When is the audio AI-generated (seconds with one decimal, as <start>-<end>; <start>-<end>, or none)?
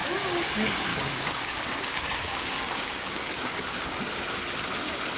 0.9-4.0